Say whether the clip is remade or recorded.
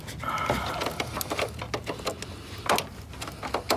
recorded